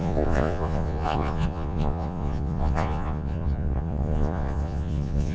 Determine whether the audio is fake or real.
fake